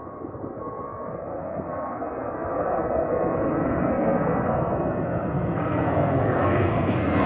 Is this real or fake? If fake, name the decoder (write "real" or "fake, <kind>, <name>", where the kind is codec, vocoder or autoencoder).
fake, codec, SNAC